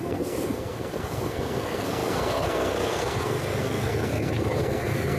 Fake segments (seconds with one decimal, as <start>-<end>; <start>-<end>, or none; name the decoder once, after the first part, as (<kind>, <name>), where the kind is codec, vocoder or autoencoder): 0.0-5.2 (codec, SNAC)